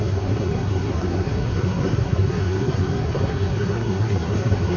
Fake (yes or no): yes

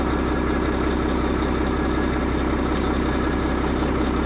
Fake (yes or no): no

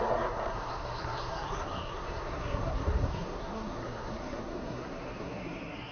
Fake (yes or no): yes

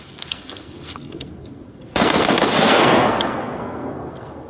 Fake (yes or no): yes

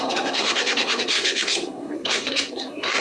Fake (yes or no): yes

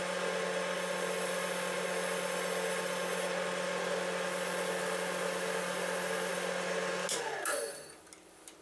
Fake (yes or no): no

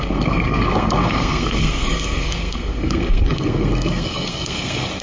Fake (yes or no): yes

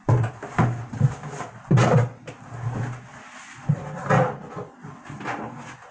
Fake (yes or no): no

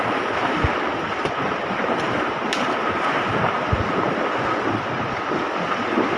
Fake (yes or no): no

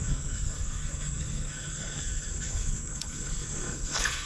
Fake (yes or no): yes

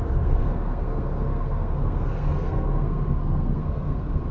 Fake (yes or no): yes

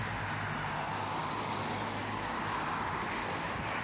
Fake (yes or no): no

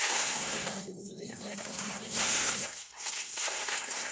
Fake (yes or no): yes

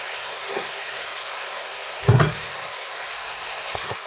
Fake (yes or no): yes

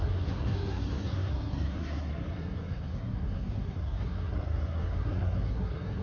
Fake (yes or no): yes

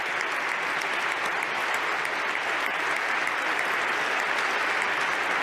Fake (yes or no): no